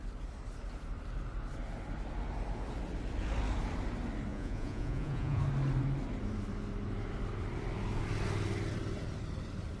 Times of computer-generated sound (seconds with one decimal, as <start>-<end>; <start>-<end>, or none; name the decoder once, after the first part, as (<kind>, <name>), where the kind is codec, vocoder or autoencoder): 4.3-5.4 (vocoder, Vocos)